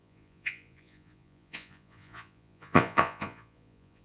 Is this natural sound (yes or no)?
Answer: no